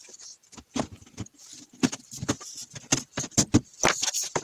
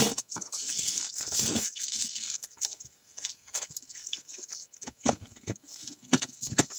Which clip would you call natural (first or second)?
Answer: first